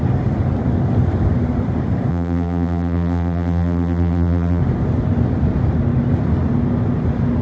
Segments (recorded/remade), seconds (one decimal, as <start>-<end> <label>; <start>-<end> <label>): 0.0-2.1 recorded; 2.1-4.6 remade; 4.6-7.4 recorded